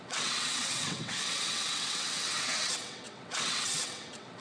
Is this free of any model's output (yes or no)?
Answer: no